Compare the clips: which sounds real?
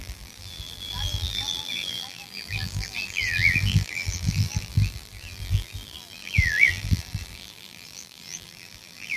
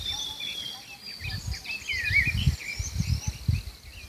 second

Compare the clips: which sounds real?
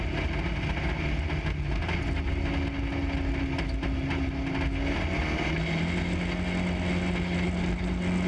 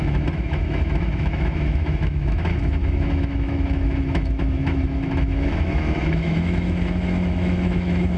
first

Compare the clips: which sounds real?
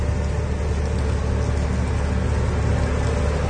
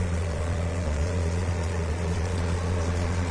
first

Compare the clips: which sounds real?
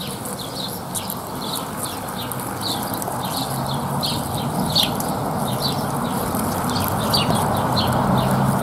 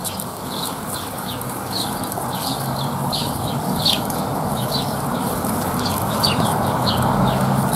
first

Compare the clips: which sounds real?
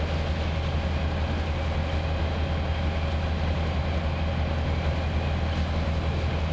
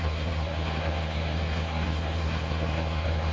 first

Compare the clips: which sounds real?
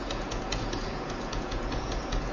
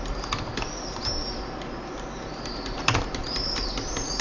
second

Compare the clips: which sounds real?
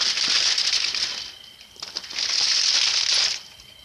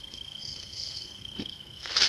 first